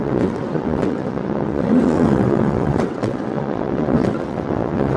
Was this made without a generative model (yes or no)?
no